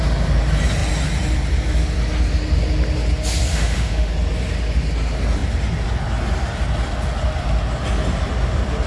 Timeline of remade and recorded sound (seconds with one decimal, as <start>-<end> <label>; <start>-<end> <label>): 0.0-3.5 recorded; 3.5-4.1 remade; 4.1-8.9 recorded